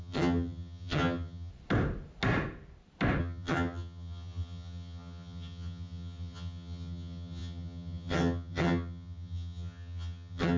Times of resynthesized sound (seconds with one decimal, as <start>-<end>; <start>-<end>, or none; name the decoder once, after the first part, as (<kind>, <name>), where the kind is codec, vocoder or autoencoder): 0.0-1.5 (vocoder, HiFi-GAN); 3.2-10.6